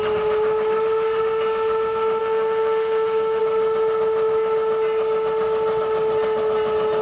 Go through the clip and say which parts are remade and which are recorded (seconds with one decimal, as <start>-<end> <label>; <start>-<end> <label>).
0.0-2.2 recorded; 2.2-3.4 remade; 3.4-7.0 recorded